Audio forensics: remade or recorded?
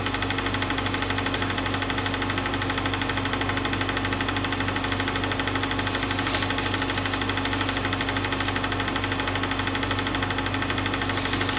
recorded